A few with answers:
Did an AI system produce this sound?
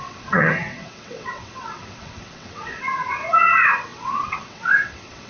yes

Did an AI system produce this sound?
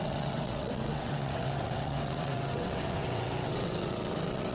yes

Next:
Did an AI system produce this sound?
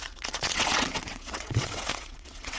yes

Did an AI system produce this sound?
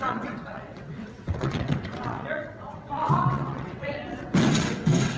yes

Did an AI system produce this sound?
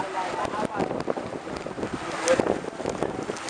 no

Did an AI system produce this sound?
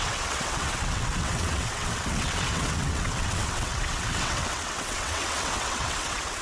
yes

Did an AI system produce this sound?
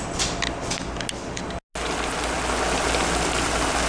no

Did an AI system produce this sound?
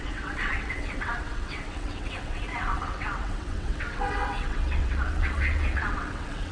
yes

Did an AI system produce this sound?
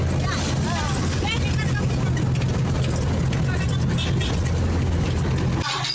no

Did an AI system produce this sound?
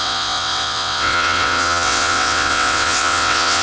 yes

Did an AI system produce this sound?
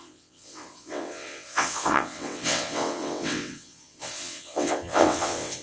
yes